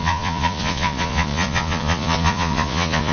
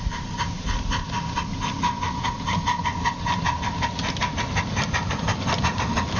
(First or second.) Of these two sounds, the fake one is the first